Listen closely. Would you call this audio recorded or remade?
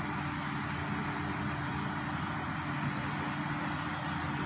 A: recorded